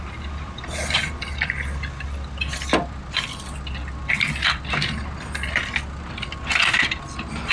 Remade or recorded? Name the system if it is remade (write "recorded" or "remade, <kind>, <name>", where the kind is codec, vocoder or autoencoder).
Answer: recorded